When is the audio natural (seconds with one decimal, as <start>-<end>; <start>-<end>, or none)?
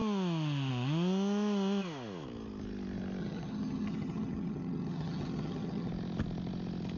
0.0-3.2; 5.9-7.0